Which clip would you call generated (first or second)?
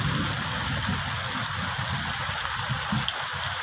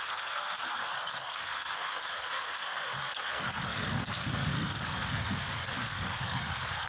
second